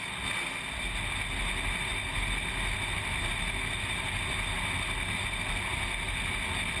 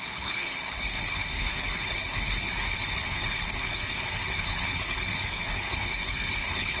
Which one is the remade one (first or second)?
second